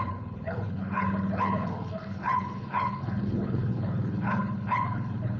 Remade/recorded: remade